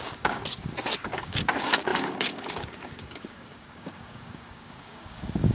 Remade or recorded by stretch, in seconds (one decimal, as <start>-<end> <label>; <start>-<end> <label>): 0.0-0.4 remade; 0.4-1.0 recorded; 1.0-5.5 remade